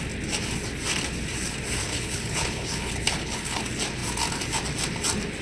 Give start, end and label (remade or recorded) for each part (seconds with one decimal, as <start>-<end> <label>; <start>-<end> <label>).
0.0-1.8 recorded; 1.8-3.6 remade; 3.6-5.4 recorded